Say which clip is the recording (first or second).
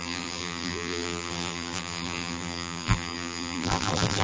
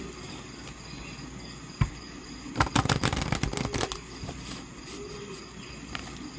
second